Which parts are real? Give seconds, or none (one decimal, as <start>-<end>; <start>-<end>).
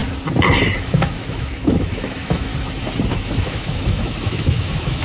0.0-0.8; 2.5-3.1